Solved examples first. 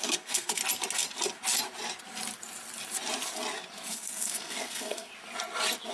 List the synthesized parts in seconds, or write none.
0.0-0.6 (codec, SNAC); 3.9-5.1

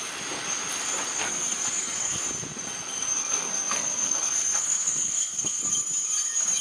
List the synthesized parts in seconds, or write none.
1.2-2.2 (codec, SNAC); 3.1-5.6

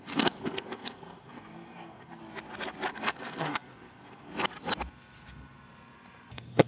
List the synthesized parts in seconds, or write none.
0.0-2.2 (codec, SNAC); 2.9-4.3; 6.3-6.7

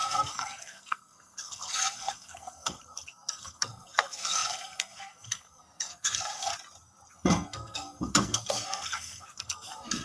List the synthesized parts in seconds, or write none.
0.0-6.5 (codec, SNAC); 7.1-10.0

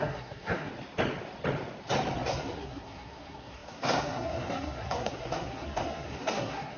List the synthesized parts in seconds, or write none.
0.0-0.7 (codec, SNAC); 2.3-6.8